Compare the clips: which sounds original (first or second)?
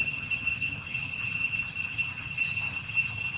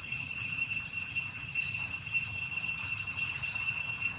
first